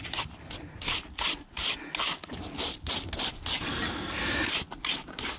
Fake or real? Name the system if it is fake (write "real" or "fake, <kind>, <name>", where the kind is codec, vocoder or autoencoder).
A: real